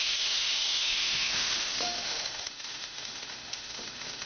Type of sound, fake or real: fake